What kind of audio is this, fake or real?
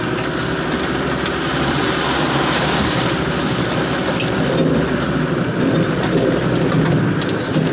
real